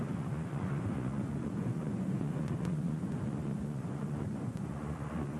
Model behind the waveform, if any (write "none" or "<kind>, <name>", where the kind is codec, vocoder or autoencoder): vocoder, Vocos